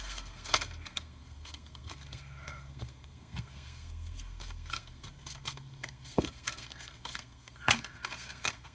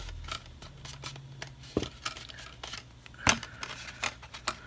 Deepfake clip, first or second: first